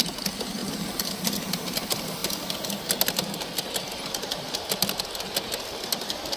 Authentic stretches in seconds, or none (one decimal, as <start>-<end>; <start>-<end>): 0.0-0.6; 1.8-6.4